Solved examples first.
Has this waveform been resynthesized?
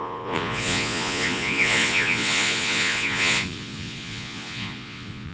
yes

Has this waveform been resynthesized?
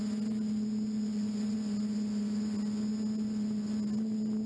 no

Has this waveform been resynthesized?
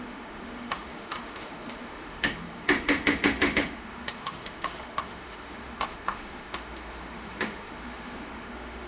yes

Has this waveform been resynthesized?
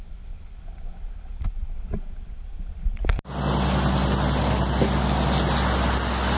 no